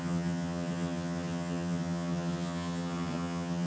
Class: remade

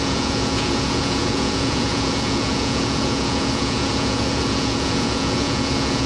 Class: remade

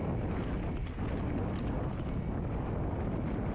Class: recorded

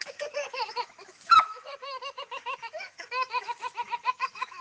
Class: remade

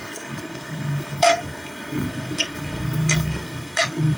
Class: remade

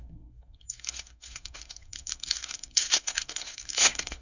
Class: remade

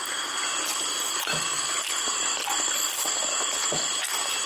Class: recorded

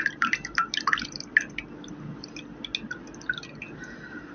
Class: recorded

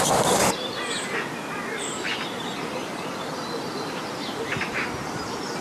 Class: recorded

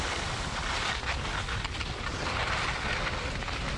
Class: recorded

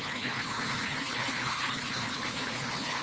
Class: remade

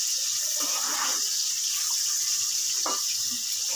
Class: recorded